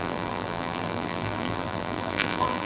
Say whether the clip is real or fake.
fake